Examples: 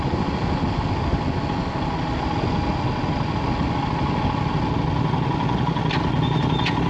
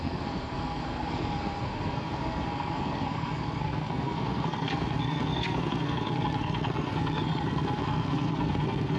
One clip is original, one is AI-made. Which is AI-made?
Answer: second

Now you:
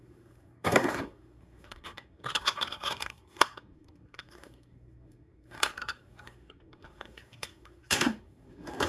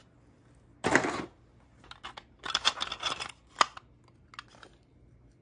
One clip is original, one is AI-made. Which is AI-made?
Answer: first